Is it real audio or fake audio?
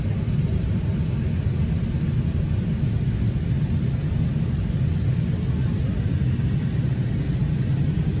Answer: real